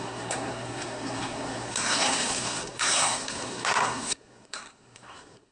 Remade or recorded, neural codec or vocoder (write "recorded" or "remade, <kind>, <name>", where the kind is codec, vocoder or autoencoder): remade, codec, SNAC